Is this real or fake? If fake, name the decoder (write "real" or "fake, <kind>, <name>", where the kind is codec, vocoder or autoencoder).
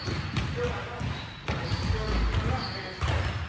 real